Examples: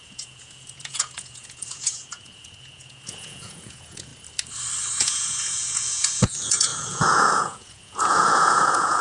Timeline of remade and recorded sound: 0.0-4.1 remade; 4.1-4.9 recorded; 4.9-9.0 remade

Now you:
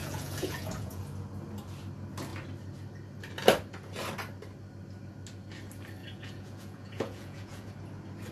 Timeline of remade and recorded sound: 0.0-1.0 remade; 1.0-6.0 recorded; 6.0-7.7 remade; 7.7-8.3 recorded

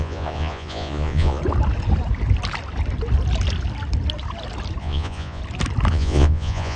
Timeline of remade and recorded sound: 0.0-1.4 remade; 1.4-4.8 recorded; 4.8-5.4 remade; 5.4-5.9 recorded; 5.9-6.8 remade

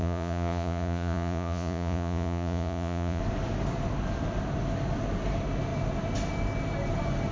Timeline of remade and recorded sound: 0.0-3.2 remade; 3.2-7.3 recorded